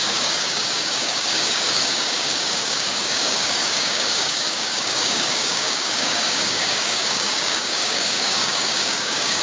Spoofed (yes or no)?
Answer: yes